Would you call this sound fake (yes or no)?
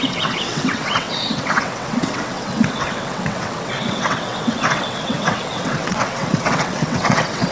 yes